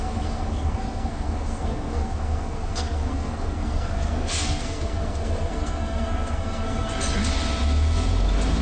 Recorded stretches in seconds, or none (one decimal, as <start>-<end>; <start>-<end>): 6.9-8.6